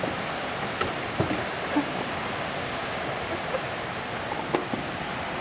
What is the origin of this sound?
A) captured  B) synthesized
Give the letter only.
A